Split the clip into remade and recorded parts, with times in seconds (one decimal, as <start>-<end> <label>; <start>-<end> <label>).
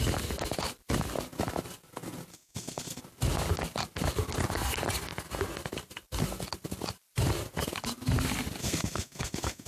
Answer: 0.0-2.3 recorded; 2.3-3.0 remade; 3.0-8.6 recorded; 8.6-9.7 remade